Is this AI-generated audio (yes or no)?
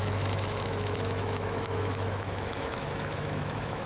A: yes